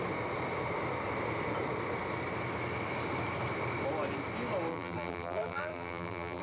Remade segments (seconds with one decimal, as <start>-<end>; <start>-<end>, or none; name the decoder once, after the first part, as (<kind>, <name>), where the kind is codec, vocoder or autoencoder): 4.7-6.4 (vocoder, BigVGAN v2)